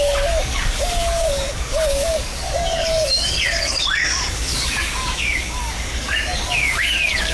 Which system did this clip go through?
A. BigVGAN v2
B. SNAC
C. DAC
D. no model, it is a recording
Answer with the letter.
C